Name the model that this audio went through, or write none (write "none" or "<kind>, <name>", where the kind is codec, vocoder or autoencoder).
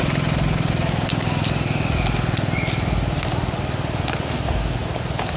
none